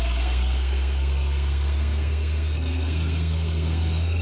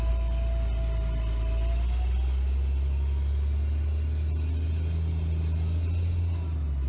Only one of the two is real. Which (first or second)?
second